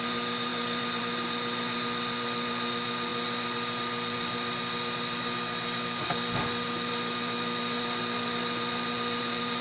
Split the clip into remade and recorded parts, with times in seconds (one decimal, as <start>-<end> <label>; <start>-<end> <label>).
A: 0.0-9.6 recorded